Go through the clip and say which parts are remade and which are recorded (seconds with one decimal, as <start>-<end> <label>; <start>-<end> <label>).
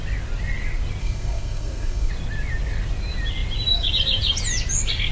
0.0-1.0 recorded; 1.0-2.1 remade; 2.1-5.1 recorded